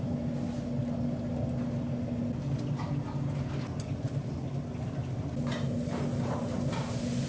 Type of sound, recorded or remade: recorded